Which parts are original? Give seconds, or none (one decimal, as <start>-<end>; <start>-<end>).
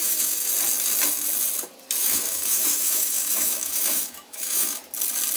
0.5-2.0; 4.8-5.4